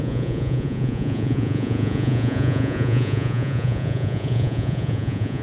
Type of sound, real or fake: fake